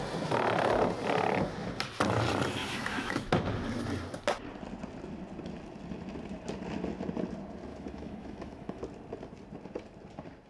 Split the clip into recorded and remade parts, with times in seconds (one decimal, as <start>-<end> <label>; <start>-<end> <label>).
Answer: 0.0-2.6 recorded; 2.6-3.3 remade; 3.3-7.7 recorded; 7.7-8.8 remade; 8.8-10.5 recorded